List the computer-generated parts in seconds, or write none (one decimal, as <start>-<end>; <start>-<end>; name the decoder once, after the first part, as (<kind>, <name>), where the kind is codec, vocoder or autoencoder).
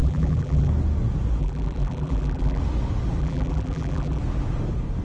0.0-0.7 (vocoder, BigVGAN v2); 1.4-2.6; 3.2-4.2